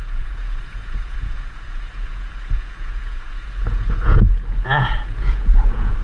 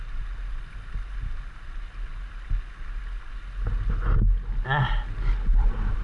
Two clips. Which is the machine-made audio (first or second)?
first